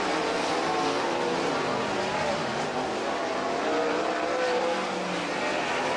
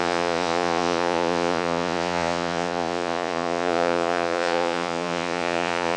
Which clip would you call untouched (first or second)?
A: first